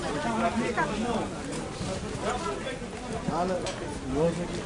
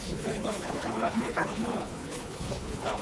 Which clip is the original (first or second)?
first